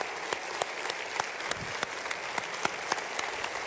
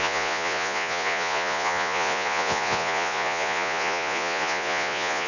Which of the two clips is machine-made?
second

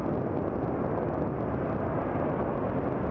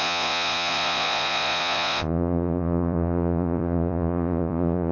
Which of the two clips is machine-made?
second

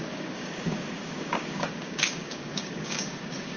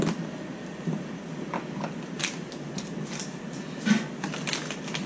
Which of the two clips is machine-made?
first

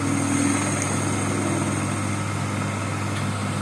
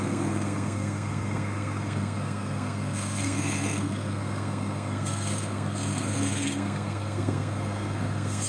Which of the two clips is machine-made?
second